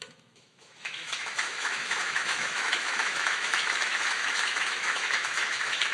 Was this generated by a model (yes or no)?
yes